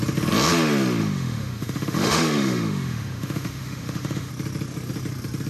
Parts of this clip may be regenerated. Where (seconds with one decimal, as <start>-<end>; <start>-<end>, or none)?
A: 1.0-4.3